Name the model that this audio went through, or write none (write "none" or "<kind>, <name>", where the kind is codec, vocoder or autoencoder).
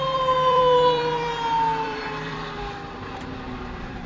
vocoder, BigVGAN v2